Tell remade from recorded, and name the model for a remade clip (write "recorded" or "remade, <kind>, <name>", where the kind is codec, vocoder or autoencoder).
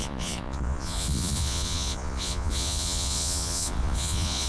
remade, vocoder, Vocos